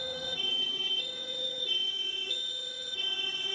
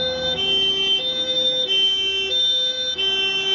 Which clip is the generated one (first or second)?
first